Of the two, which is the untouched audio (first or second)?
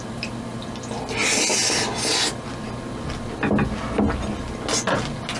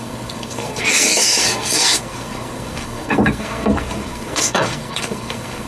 first